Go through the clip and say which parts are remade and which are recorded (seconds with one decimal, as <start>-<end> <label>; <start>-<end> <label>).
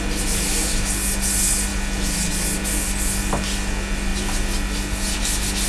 0.0-5.7 recorded